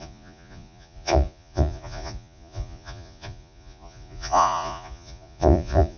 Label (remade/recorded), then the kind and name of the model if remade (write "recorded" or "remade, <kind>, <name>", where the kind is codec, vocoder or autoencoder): remade, vocoder, Vocos